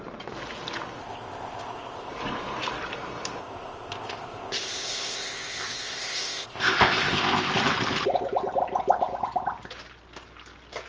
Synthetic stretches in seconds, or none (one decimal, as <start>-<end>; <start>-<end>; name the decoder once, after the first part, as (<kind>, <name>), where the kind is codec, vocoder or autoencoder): 1.0-2.1 (codec, ZipCodec); 3.4-7.5